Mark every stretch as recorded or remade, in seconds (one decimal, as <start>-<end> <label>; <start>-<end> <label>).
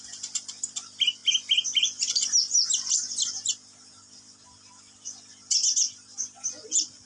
0.0-7.1 recorded